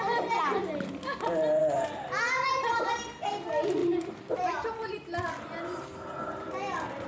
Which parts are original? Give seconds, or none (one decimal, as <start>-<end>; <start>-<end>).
0.0-1.6; 3.0-3.8; 4.4-7.1